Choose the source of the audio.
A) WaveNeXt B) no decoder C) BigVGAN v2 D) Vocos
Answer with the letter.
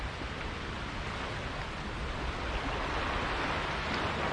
B